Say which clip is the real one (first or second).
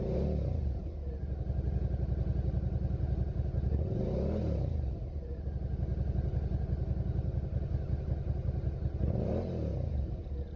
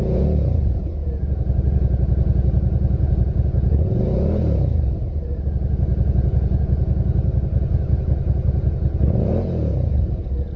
first